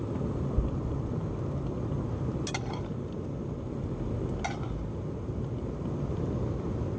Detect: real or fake real